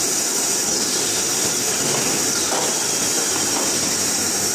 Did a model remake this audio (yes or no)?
no